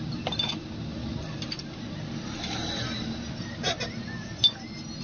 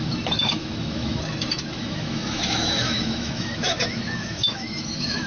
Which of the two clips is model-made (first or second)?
second